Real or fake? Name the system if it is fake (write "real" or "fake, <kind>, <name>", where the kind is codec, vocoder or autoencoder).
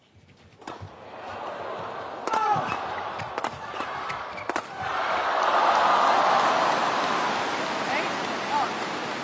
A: real